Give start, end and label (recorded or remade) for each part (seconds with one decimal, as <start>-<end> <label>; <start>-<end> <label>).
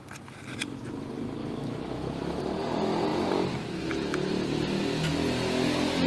0.0-1.4 recorded; 1.4-2.4 remade; 2.4-6.1 recorded